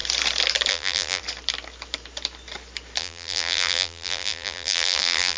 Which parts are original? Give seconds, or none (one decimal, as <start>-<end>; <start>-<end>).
0.0-0.7; 1.2-3.0